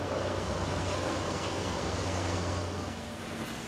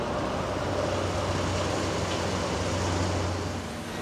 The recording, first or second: second